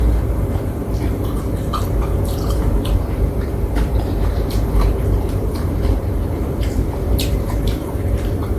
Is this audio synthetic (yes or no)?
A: yes